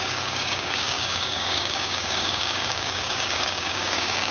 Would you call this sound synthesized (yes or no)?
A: yes